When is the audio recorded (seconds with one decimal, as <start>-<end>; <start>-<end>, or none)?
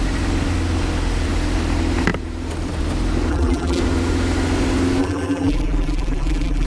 0.0-3.3; 3.8-5.0